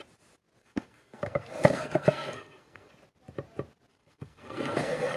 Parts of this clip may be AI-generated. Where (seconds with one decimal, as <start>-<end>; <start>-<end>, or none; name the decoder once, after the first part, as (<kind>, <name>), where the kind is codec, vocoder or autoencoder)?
0.6-2.9 (codec, SNAC); 3.9-5.2